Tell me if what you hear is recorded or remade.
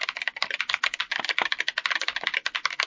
recorded